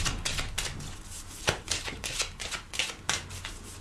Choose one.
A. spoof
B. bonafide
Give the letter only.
B